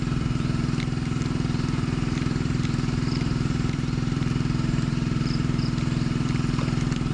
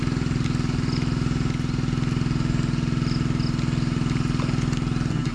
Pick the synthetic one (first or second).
first